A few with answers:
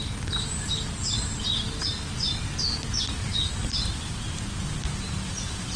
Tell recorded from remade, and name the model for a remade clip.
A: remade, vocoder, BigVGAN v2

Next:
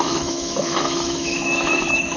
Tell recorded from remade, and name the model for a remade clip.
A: remade, autoencoder, DAC-VAE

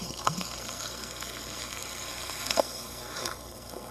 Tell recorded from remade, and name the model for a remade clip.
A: remade, codec, SNAC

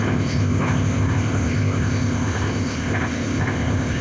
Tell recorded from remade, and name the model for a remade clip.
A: remade, codec, ZipCodec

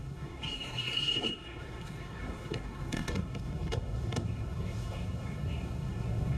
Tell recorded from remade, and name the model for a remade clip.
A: remade, codec, SNAC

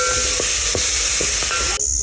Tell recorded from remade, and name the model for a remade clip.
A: recorded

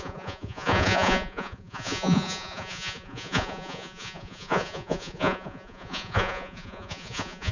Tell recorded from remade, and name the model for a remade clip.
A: remade, vocoder, Vocos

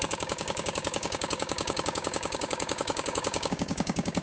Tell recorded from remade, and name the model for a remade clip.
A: remade, codec, DAC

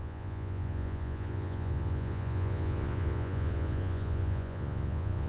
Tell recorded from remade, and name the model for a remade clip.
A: remade, vocoder, Vocos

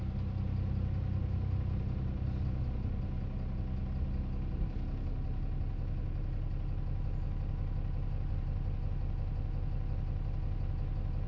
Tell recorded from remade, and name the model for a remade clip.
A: recorded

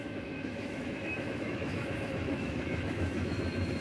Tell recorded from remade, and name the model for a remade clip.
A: remade, autoencoder, DAC-VAE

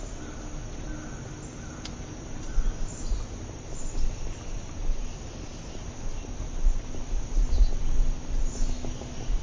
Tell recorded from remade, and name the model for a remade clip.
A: recorded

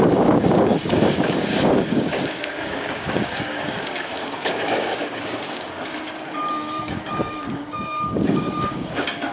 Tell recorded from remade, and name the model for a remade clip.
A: remade, codec, DAC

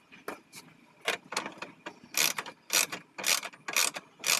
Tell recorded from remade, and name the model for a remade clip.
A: recorded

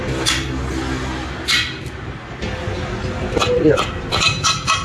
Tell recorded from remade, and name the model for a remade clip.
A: recorded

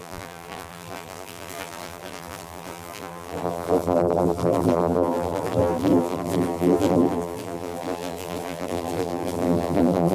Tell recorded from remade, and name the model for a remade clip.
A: remade, vocoder, BigVGAN v2